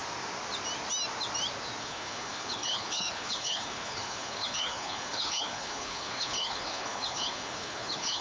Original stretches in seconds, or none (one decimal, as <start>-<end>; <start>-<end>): 0.0-1.8